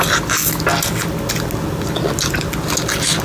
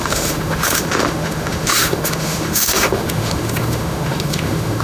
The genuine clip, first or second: first